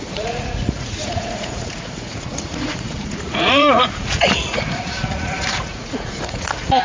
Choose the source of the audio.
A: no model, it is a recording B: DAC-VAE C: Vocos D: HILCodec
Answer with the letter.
C